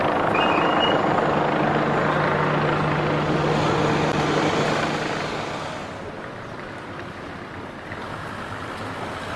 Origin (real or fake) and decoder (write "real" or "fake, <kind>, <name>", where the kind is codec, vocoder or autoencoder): real